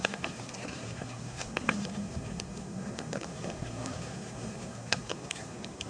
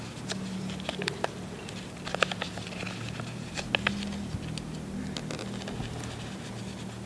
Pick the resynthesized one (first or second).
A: first